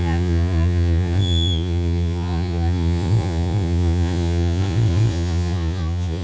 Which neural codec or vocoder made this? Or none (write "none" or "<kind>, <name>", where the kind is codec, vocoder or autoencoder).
vocoder, Vocos